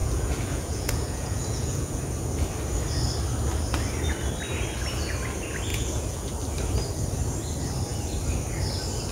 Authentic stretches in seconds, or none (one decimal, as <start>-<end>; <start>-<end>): 2.0-5.7; 6.3-9.1

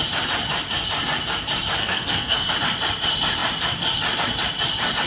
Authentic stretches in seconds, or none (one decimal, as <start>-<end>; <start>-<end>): 0.0-1.8; 2.5-5.1

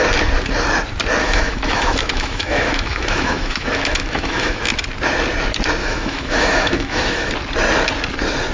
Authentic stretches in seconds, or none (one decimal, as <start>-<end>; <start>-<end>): 0.0-1.2; 4.6-5.8; 7.3-8.5

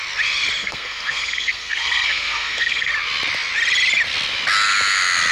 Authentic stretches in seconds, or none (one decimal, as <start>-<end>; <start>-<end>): 0.0-0.6; 2.9-5.3

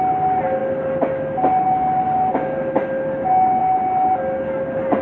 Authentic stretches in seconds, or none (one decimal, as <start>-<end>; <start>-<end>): 0.0-5.0